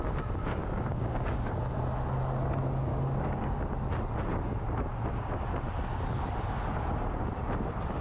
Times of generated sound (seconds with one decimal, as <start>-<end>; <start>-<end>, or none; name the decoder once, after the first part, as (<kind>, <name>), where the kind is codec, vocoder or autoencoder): 0.6-1.5 (codec, DAC); 2.9-3.6